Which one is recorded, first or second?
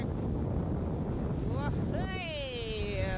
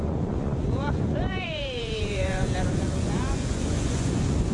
first